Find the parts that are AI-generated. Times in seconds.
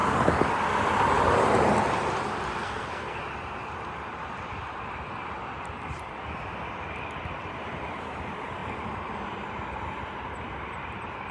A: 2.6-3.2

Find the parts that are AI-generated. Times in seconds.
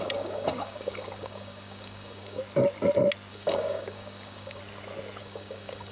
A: 0.0-2.4; 3.3-4.6; 5.2-5.9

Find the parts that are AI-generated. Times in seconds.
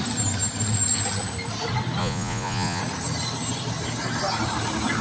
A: 2.0-2.8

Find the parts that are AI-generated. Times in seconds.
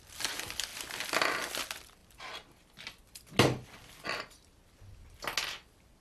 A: none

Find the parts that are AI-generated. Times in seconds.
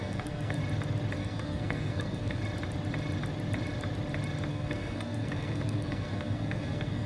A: 0.0-0.6; 1.2-2.4; 4.5-7.1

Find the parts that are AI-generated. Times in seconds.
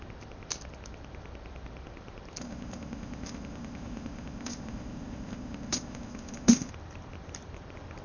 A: 2.4-6.7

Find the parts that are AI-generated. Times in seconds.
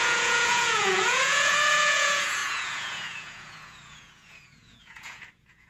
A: 0.0-5.7